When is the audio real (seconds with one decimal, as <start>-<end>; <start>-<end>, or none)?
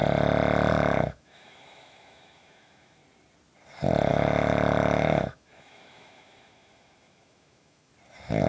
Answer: 0.0-0.7; 3.0-4.1; 7.9-8.5